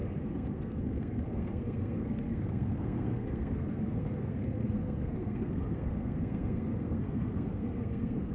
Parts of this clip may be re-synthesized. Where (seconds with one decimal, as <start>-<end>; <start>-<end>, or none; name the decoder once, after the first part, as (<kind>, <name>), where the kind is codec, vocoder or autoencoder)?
0.0-8.3 (codec, SNAC)